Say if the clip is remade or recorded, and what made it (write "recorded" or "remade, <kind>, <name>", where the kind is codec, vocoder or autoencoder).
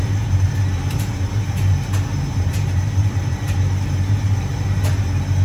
remade, vocoder, BigVGAN v2